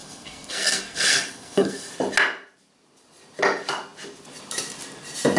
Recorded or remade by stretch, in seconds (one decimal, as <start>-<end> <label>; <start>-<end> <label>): 0.0-1.9 remade; 1.9-5.4 recorded